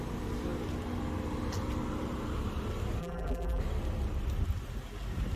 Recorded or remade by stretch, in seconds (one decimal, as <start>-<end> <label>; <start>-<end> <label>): 0.0-3.0 recorded; 3.0-3.6 remade; 3.6-5.4 recorded